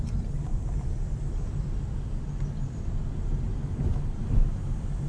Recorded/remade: remade